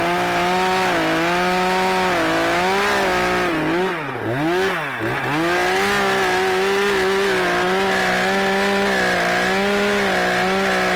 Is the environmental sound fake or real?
real